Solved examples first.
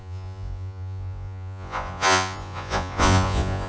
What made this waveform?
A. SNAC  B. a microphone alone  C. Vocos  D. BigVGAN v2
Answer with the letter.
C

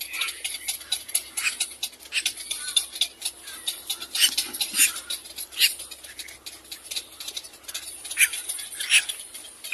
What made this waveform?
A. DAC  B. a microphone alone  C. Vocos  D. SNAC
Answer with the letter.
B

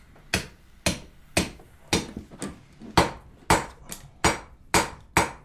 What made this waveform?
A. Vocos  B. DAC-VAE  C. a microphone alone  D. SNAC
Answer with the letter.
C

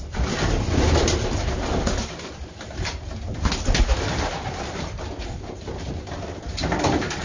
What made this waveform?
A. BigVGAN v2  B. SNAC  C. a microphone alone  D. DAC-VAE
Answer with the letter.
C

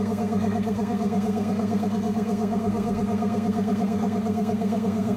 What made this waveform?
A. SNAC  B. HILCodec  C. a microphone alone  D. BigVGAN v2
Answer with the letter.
A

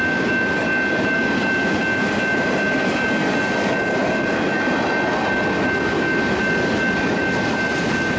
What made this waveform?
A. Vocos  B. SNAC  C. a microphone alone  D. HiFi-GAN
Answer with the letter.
C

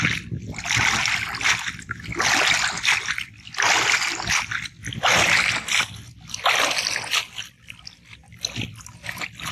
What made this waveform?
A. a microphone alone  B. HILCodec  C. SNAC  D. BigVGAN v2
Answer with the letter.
A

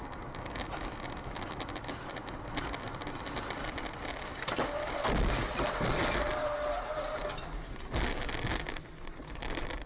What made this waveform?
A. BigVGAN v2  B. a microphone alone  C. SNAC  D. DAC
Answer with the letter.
B